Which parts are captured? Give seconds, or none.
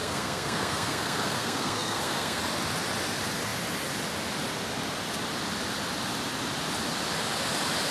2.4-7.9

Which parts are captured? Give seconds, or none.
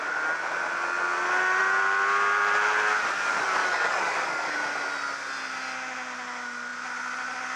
0.0-3.6; 4.5-7.6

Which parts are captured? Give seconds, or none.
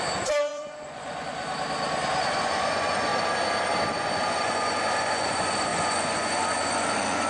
1.4-2.2; 3.1-3.9